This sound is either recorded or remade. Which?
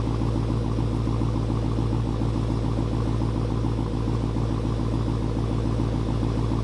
recorded